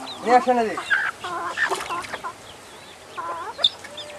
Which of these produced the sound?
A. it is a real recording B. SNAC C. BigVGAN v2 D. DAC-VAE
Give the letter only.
A